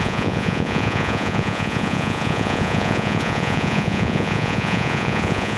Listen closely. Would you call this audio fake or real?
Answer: fake